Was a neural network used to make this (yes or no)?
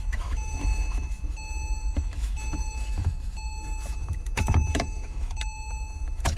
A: yes